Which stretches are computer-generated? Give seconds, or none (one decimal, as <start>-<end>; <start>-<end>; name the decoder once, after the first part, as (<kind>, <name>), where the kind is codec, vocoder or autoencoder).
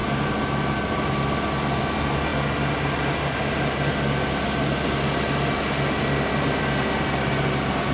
none